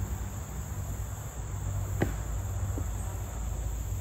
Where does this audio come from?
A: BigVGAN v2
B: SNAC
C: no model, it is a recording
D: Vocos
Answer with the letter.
C